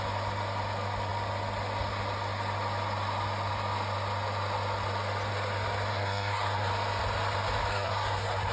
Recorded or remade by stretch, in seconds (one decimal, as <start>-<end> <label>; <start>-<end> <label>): 0.0-5.9 recorded; 5.9-6.7 remade; 6.7-7.7 recorded; 7.7-8.5 remade